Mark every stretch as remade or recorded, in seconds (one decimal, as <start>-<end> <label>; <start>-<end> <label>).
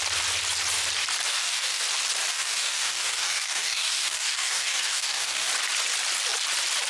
0.0-1.3 recorded; 1.3-1.8 remade; 1.8-2.3 recorded; 2.3-5.5 remade; 5.5-6.9 recorded